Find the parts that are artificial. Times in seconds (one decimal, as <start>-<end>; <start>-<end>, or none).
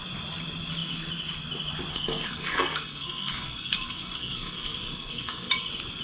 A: 1.9-5.5